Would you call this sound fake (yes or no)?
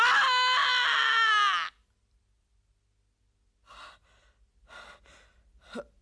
no